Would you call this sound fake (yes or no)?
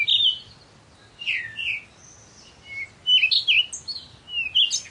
no